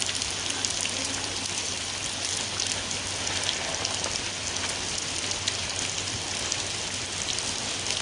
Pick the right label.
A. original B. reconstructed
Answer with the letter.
A